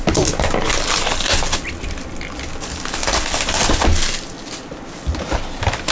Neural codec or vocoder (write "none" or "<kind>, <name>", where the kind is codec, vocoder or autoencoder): none